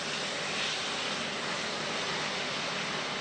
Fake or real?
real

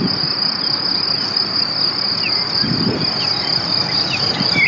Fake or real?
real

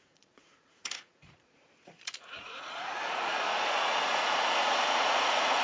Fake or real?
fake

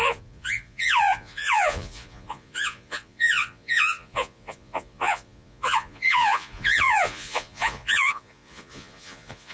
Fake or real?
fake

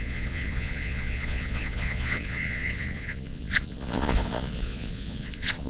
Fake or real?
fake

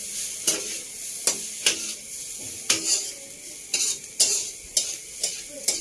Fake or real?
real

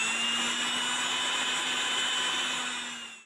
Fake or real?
real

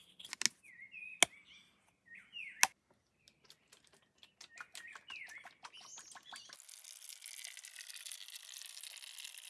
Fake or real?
real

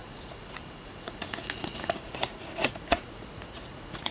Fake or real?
fake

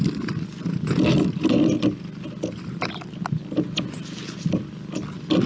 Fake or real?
real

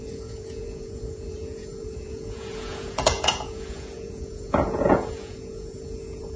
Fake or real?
fake